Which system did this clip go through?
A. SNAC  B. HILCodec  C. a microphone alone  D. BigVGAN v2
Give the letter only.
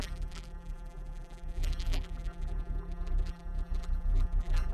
D